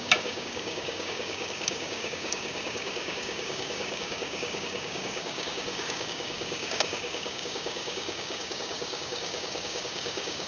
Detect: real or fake fake